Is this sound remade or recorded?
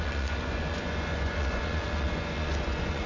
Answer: remade